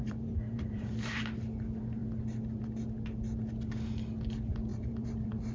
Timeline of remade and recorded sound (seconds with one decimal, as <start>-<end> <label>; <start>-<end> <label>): 0.0-1.2 remade; 1.2-4.7 recorded; 4.7-5.5 remade